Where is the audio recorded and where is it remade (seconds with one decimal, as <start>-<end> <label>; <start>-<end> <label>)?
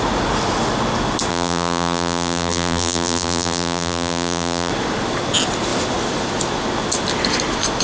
0.0-1.3 recorded; 1.3-4.7 remade; 4.7-7.8 recorded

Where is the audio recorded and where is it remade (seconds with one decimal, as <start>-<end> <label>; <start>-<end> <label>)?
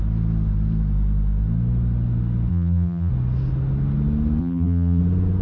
0.0-2.5 recorded; 2.5-3.1 remade; 3.1-4.4 recorded; 4.4-5.0 remade; 5.0-5.4 recorded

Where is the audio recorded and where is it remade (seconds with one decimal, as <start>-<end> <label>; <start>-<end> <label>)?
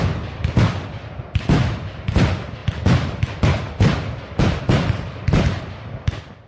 0.0-6.5 recorded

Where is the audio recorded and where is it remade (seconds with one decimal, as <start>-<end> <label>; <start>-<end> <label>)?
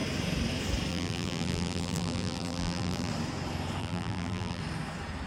0.0-0.9 recorded; 0.9-3.1 remade; 3.1-3.8 recorded; 3.8-4.6 remade; 4.6-5.3 recorded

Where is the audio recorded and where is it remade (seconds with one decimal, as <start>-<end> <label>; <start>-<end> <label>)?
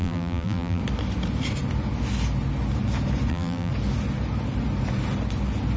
0.0-0.8 remade; 0.8-3.3 recorded; 3.3-3.7 remade; 3.7-5.8 recorded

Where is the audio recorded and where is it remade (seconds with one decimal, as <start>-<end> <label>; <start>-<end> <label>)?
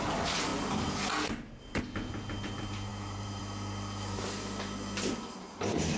0.0-2.9 recorded; 2.9-3.4 remade; 3.4-6.0 recorded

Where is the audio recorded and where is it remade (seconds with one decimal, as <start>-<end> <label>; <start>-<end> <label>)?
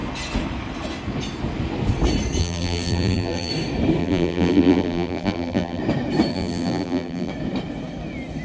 0.0-2.4 recorded; 2.4-3.5 remade; 3.5-4.0 recorded; 4.0-5.8 remade; 5.8-6.3 recorded; 6.3-7.3 remade; 7.3-8.4 recorded